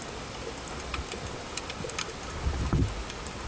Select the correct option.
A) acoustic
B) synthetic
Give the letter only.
A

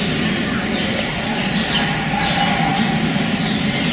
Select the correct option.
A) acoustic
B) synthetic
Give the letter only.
A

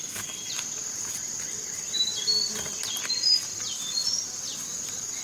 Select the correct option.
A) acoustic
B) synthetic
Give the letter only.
B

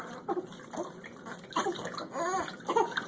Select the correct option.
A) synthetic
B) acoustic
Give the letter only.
B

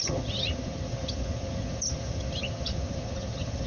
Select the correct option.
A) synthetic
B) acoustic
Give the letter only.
A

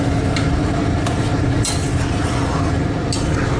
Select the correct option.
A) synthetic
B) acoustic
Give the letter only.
B